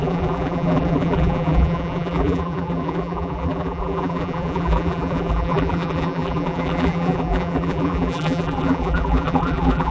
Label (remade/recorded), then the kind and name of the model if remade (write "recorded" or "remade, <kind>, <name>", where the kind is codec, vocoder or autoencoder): remade, vocoder, BigVGAN v2